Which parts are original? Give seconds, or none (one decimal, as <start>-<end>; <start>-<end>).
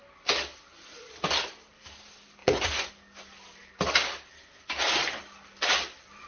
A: 0.0-2.4; 2.9-6.3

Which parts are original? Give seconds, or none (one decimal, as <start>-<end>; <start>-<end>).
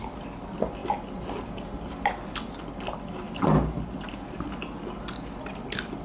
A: 0.0-6.0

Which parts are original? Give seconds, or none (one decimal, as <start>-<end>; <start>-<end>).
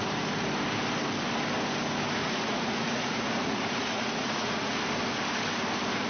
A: 0.0-2.2; 4.8-6.1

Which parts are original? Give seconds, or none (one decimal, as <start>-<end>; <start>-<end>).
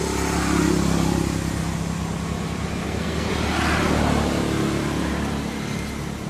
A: 0.0-2.8; 3.3-6.3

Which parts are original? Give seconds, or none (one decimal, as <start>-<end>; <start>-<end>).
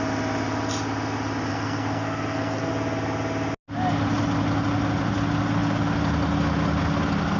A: 0.0-1.5; 2.7-7.4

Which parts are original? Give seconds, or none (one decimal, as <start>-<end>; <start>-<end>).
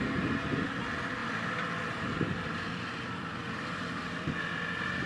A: 0.0-1.2; 4.3-5.1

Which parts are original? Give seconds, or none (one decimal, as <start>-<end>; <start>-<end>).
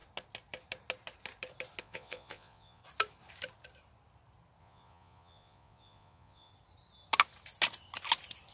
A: 0.0-1.8; 2.8-4.6; 6.5-8.5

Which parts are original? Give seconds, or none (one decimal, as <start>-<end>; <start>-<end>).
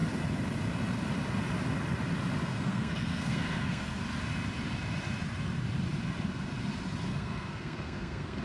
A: 0.0-2.5; 4.0-7.1